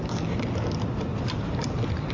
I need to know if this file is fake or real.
real